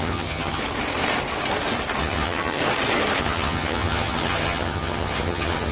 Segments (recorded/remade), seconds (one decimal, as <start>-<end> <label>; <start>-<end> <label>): 0.0-0.6 remade; 0.6-2.0 recorded; 2.0-2.6 remade; 2.6-3.2 recorded; 3.2-5.7 remade